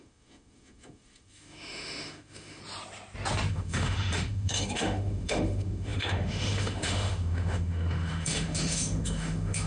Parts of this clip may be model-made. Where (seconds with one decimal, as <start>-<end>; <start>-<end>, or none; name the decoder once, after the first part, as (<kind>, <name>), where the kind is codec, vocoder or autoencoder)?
0.0-2.6 (autoencoder, DAC-VAE); 3.5-9.7